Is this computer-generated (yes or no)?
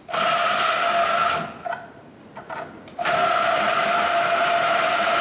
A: no